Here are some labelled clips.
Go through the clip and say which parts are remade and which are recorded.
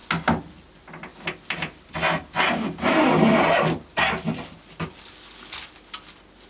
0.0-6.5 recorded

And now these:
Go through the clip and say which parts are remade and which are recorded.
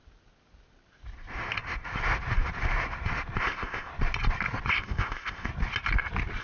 0.0-3.4 recorded; 3.4-3.9 remade; 3.9-4.7 recorded; 4.7-5.5 remade; 5.5-6.4 recorded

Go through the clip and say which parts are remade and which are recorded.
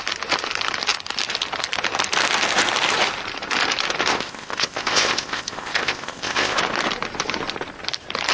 0.0-4.1 recorded; 4.1-6.6 remade; 6.6-8.3 recorded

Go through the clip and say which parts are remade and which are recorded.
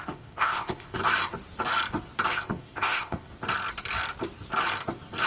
0.0-1.0 remade; 1.0-2.3 recorded; 2.3-3.3 remade; 3.3-5.3 recorded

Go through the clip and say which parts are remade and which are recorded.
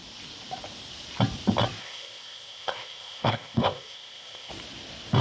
0.0-1.8 recorded; 1.8-4.5 remade; 4.5-5.2 recorded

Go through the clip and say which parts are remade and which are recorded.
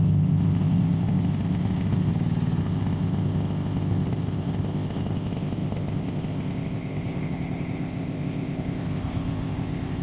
0.0-2.1 remade; 2.1-2.6 recorded; 2.6-10.0 remade